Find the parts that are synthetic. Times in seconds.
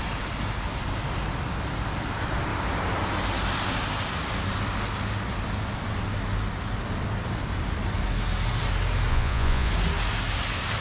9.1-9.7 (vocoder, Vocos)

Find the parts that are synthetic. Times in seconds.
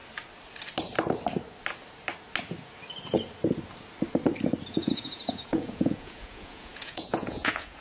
4.7-7.8 (vocoder, Vocos)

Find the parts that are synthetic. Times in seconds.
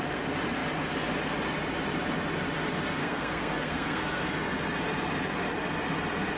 3.0-4.3 (codec, SNAC)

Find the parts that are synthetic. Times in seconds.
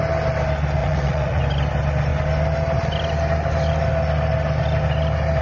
0.8-1.4 (vocoder, Vocos)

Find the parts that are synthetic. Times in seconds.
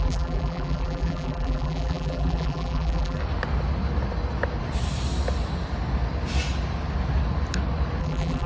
0.0-3.2 (vocoder, BigVGAN v2); 8.0-8.5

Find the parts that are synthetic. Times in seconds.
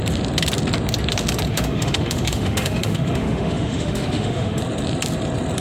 1.5-4.6 (autoencoder, DAC-VAE)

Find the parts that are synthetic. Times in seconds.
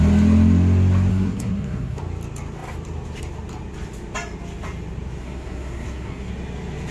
1.1-2.0 (codec, SNAC); 5.2-6.3